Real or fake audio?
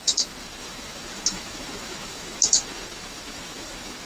fake